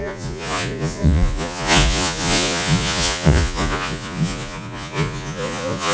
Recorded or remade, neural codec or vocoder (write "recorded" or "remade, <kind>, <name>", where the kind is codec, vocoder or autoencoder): remade, vocoder, Vocos